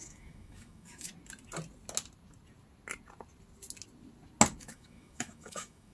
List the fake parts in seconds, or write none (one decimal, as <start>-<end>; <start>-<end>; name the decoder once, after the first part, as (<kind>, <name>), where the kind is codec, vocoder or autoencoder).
0.0-1.1 (autoencoder, DAC-VAE); 4.6-5.9